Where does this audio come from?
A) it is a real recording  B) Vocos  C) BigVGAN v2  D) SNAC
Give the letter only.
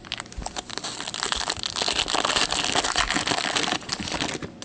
A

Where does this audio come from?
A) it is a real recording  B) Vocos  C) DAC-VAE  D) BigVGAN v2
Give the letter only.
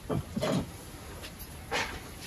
A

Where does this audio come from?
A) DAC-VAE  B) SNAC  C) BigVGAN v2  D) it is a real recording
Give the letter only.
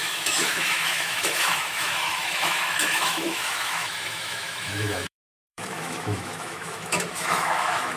A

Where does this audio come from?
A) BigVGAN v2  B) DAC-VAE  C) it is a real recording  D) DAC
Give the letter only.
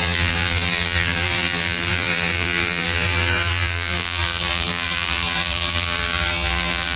A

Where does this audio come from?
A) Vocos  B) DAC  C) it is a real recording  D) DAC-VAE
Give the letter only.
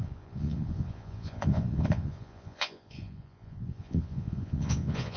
A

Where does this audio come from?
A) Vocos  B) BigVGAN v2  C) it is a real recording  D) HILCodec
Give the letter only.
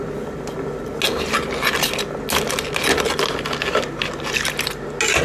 C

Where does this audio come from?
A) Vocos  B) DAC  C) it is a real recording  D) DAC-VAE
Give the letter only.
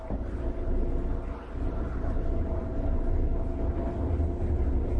C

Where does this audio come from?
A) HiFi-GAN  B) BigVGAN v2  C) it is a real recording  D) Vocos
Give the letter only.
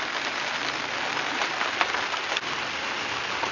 C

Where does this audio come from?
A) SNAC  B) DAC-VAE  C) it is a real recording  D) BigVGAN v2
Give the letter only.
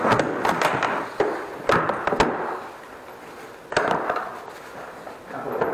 C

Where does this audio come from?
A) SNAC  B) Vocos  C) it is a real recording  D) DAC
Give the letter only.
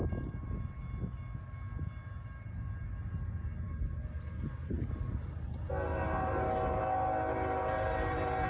C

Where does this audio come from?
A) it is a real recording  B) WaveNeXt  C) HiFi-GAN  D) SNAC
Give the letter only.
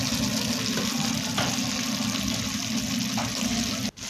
A